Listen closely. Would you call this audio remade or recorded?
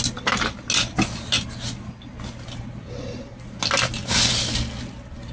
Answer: recorded